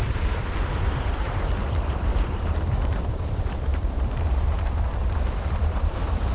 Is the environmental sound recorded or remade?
remade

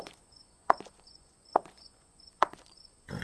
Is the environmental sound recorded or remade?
remade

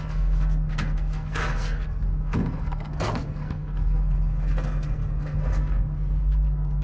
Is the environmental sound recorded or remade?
remade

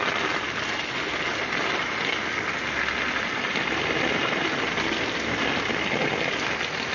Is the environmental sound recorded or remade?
recorded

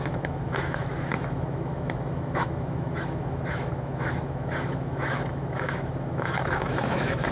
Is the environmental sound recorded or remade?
remade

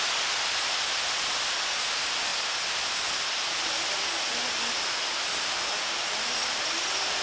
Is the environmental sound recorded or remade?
recorded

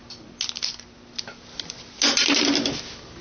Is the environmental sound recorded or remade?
recorded